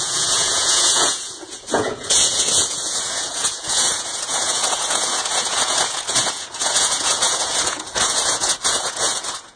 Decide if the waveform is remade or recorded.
remade